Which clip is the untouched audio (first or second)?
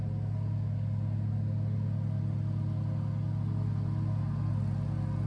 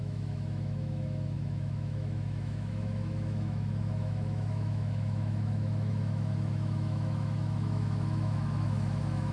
first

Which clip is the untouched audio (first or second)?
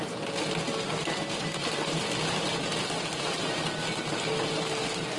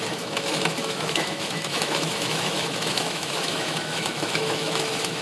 first